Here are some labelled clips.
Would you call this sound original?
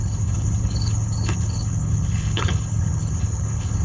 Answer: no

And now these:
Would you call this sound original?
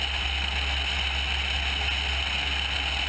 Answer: yes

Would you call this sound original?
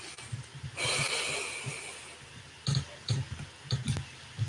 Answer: yes